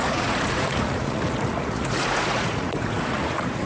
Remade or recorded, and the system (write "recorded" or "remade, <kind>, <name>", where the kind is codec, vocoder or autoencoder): remade, vocoder, Vocos